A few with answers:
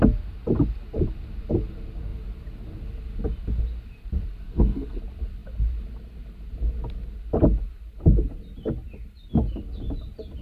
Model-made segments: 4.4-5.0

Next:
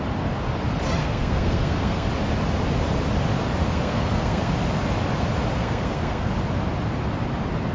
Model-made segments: 1.0-2.1; 3.6-4.5; 5.6-6.3

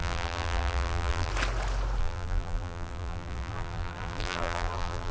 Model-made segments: 0.0-1.3; 2.0-5.1